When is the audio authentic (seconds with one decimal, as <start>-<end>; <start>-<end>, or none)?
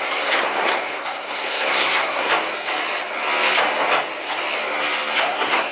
2.3-5.2